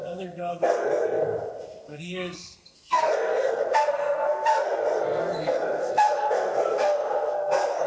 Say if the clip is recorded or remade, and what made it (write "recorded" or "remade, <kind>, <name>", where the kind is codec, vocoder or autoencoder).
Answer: remade, codec, SNAC